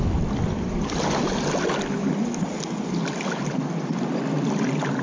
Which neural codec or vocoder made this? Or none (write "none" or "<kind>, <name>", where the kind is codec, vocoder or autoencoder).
none